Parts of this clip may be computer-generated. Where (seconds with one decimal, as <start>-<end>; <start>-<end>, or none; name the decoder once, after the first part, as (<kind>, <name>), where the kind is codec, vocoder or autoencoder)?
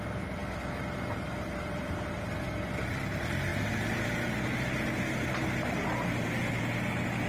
none